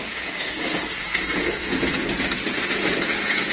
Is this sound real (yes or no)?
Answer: no